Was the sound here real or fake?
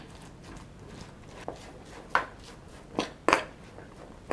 real